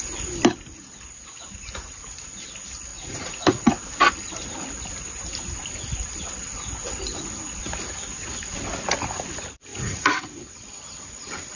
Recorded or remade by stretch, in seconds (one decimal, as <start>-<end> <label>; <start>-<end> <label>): 0.0-2.9 recorded; 2.9-3.7 remade; 3.7-9.7 recorded; 9.7-10.5 remade; 10.5-11.6 recorded